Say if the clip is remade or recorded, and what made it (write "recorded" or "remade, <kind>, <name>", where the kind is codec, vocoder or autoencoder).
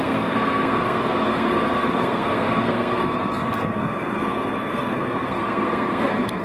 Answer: remade, codec, SNAC